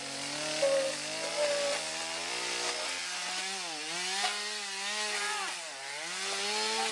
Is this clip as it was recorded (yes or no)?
yes